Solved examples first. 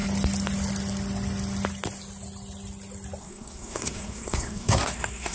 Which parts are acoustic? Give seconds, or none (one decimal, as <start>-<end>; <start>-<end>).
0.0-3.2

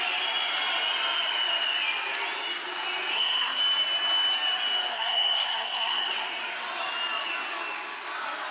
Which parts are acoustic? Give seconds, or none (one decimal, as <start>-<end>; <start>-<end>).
0.0-3.1; 3.6-4.9; 6.1-8.5

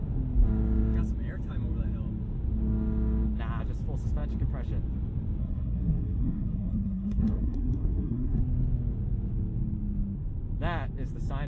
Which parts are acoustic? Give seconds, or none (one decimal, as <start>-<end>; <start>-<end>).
0.0-5.4; 8.4-11.5

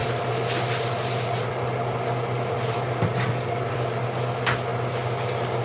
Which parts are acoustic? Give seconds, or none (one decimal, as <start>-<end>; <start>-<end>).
0.0-5.6

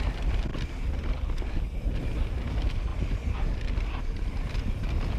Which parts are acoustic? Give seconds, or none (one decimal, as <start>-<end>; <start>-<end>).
0.0-5.2